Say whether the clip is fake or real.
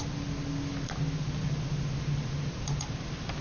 real